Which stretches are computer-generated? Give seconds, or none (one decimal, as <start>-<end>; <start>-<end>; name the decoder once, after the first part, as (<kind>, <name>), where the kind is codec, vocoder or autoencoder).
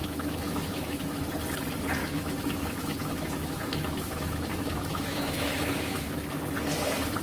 0.0-1.3 (autoencoder, DAC-VAE); 2.0-6.3